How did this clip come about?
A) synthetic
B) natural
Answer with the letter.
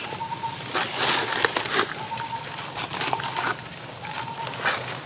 B